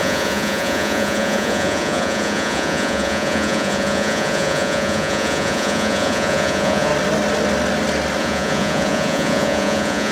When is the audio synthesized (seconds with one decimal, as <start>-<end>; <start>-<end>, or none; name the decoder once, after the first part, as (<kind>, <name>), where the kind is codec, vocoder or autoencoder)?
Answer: 0.0-6.9 (vocoder, Vocos); 8.2-10.1